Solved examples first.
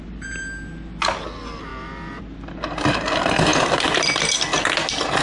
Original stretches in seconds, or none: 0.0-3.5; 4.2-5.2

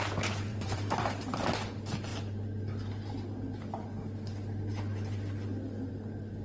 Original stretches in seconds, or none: 0.0-0.5; 1.5-6.4

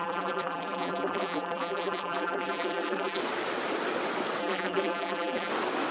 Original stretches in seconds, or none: 3.2-4.4; 5.5-5.9